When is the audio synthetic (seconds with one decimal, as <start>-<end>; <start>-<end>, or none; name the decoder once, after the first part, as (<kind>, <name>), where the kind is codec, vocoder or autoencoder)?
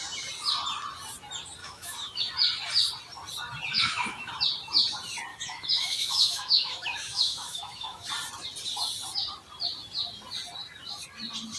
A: 1.6-2.3 (autoencoder, DAC-VAE); 3.7-4.3; 5.3-8.1